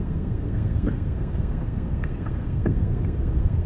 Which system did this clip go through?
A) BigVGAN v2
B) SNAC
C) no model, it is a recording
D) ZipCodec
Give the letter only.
B